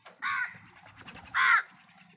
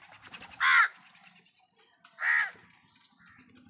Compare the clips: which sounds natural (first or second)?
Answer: second